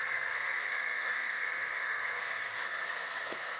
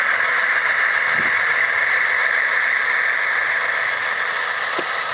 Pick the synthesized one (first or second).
first